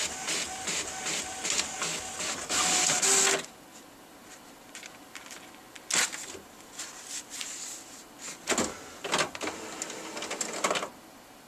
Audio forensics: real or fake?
real